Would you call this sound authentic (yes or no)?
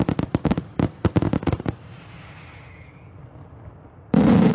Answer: yes